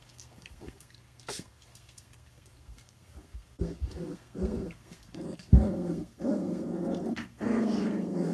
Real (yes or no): no